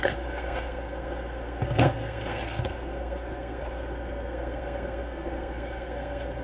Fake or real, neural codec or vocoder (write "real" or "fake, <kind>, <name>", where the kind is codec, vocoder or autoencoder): fake, codec, SNAC